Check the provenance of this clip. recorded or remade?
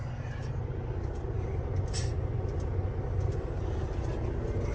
recorded